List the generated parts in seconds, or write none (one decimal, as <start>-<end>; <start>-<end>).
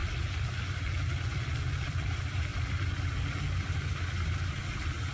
0.7-2.5; 3.6-5.1